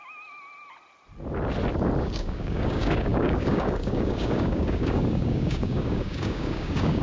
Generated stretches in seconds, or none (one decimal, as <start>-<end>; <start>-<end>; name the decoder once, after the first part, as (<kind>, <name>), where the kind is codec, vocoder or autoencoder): 2.0-7.0 (codec, DAC)